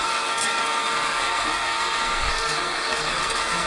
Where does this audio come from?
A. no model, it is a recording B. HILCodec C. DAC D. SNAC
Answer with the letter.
D